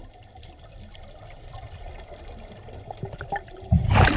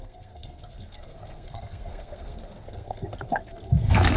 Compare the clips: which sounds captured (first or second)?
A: first